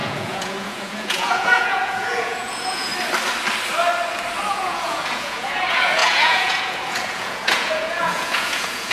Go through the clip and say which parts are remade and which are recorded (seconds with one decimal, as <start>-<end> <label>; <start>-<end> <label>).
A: 0.0-2.9 remade; 2.9-4.5 recorded; 4.5-8.9 remade

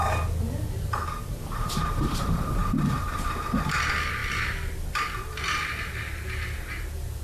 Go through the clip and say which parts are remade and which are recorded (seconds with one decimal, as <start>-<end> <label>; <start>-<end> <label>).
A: 0.0-1.3 recorded; 1.3-3.3 remade; 3.3-7.2 recorded

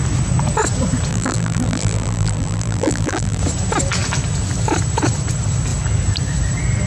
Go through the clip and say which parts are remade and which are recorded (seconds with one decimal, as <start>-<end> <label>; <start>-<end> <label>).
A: 0.0-1.1 recorded; 1.1-3.4 remade; 3.4-6.9 recorded

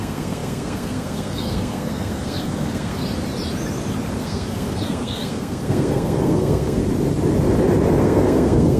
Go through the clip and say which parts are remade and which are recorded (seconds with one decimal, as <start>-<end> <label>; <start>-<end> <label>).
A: 0.0-3.0 remade; 3.0-4.2 recorded; 4.2-6.8 remade; 6.8-8.0 recorded; 8.0-8.8 remade

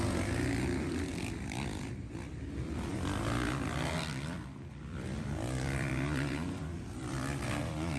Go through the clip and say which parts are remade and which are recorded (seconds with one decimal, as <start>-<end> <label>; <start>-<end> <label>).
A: 0.0-1.1 recorded; 1.1-1.9 remade; 1.9-2.9 recorded; 2.9-7.6 remade; 7.6-8.0 recorded

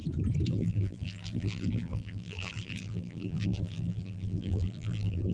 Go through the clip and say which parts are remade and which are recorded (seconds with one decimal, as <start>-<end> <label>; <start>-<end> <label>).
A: 0.0-0.5 recorded; 0.5-5.3 remade

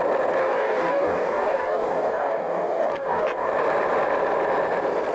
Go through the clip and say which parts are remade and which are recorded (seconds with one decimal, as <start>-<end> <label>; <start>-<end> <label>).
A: 0.0-0.4 recorded; 0.4-3.5 remade; 3.5-5.1 recorded